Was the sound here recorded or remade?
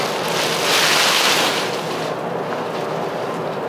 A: recorded